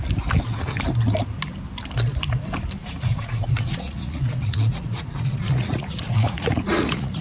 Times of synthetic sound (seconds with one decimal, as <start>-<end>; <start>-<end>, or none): 2.8-7.2